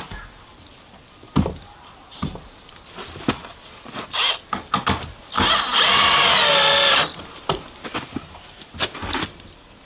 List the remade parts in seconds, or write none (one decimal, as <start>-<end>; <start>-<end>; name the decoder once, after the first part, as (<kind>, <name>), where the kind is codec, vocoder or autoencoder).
none